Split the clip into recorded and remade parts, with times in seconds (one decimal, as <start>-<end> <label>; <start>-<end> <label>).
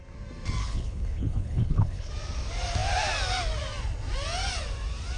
0.0-0.6 recorded; 0.6-2.1 remade; 2.1-5.2 recorded